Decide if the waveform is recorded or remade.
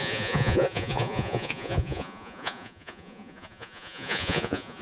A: remade